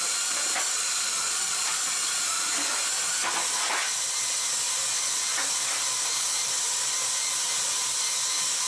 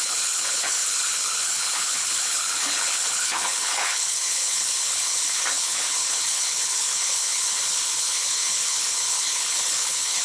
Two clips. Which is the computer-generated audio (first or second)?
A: second